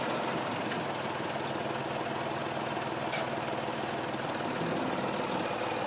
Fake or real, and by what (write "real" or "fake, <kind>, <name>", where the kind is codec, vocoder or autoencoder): real